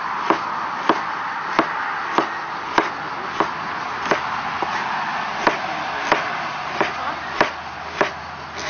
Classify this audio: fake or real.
real